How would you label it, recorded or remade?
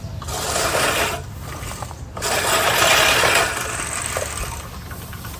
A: recorded